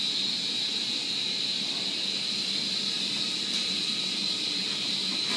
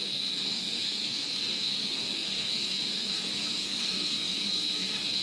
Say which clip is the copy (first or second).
second